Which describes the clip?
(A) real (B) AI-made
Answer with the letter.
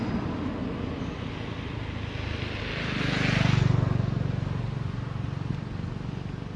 A